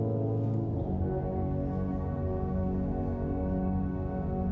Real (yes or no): yes